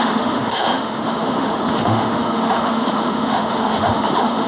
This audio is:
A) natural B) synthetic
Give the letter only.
B